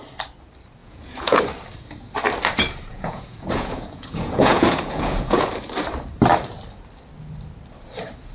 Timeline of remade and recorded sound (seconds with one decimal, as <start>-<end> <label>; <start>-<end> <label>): 0.0-0.8 recorded; 0.8-1.4 remade; 1.4-2.9 recorded; 2.9-5.5 remade; 5.5-8.3 recorded

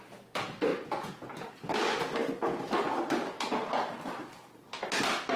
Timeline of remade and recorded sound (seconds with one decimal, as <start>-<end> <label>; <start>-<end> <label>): 0.0-0.7 recorded; 0.7-1.5 remade; 1.5-5.4 recorded

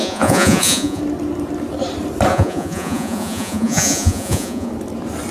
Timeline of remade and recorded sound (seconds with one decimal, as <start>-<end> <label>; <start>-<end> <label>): 0.0-1.0 remade; 1.0-2.3 recorded; 2.3-4.7 remade; 4.7-5.3 recorded

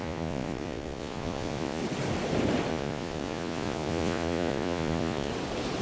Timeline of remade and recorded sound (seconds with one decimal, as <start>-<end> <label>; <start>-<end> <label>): 0.0-1.8 remade; 1.8-2.7 recorded; 2.7-5.3 remade; 5.3-5.8 recorded